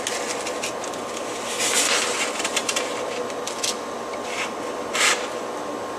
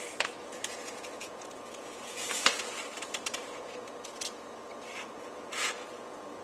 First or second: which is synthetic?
second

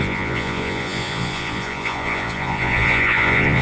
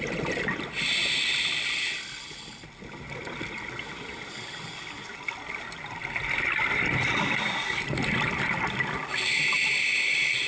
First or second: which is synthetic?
first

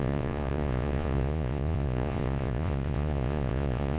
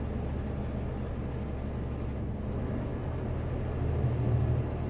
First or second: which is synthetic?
first